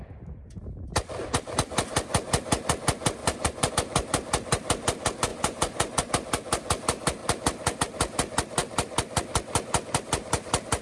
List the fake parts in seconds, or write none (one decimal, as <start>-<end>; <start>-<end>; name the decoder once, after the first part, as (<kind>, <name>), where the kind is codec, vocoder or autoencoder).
3.2-3.7 (vocoder, Vocos); 5.3-6.1